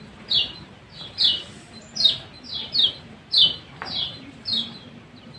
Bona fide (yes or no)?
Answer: no